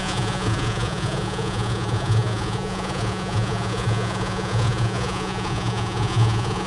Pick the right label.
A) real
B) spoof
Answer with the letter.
B